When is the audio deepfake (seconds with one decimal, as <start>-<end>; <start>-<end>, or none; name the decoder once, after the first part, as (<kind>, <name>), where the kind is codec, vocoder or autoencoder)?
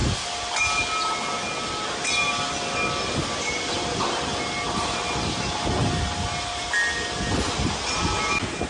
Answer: none